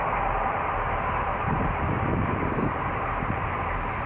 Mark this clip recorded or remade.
remade